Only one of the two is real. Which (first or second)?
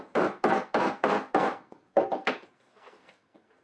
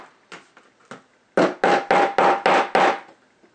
second